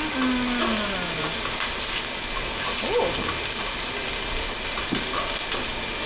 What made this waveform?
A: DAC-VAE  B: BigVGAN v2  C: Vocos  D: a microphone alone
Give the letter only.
D